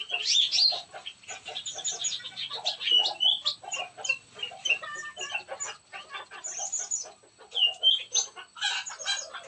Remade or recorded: recorded